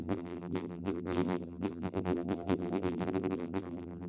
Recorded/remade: remade